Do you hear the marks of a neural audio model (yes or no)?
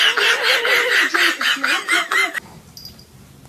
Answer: no